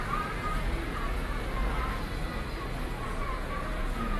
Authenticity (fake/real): fake